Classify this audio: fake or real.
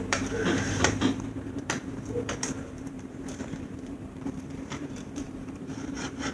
fake